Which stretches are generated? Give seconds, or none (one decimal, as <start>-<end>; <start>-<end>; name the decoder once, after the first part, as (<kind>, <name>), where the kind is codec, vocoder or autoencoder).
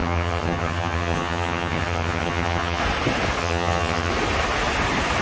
0.0-2.8 (vocoder, HiFi-GAN); 3.4-4.1